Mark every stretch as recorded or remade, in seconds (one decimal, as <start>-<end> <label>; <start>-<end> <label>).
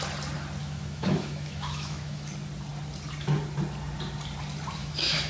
0.0-0.6 recorded; 0.6-2.3 remade; 2.3-4.8 recorded; 4.8-5.3 remade